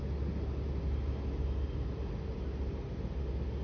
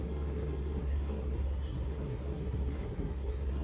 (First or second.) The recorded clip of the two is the first